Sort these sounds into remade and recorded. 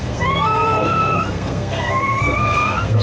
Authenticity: remade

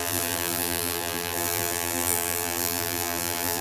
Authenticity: remade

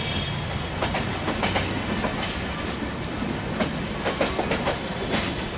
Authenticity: recorded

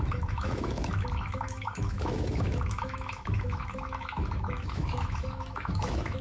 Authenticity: remade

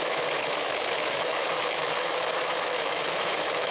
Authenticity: remade